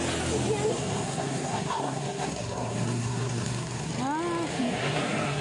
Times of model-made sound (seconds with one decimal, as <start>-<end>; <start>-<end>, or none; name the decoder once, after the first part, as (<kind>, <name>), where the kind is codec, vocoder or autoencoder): 0.7-3.9 (codec, SNAC); 4.5-5.4